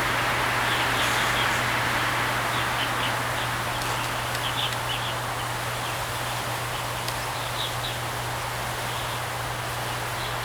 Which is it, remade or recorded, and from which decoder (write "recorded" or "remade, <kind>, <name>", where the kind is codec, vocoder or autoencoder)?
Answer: recorded